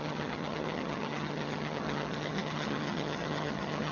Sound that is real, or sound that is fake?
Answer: fake